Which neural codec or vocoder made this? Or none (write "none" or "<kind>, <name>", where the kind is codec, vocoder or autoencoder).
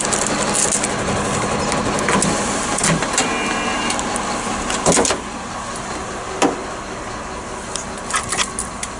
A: none